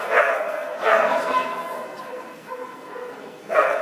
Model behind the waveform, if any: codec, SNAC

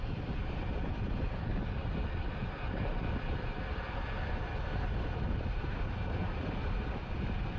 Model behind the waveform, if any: vocoder, BigVGAN v2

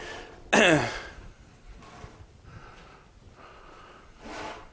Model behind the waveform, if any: none